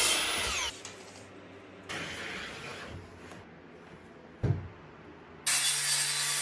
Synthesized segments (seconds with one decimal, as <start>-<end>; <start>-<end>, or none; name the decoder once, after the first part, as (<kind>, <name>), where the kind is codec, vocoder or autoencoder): none